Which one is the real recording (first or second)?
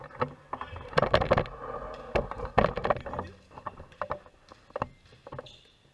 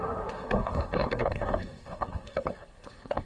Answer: first